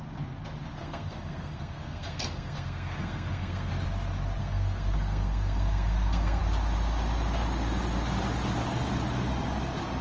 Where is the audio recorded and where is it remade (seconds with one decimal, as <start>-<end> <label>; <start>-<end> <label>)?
0.0-0.8 recorded; 0.8-3.7 remade; 3.7-4.4 recorded; 4.4-6.4 remade; 6.4-10.0 recorded